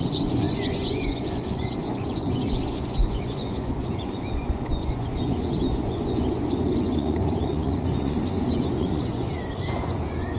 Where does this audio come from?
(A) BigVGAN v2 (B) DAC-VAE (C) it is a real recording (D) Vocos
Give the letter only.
D